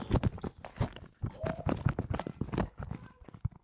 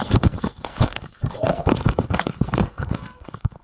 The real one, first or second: first